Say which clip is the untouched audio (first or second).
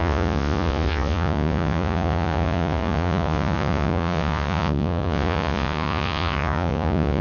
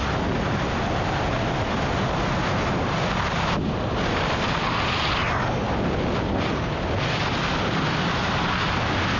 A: second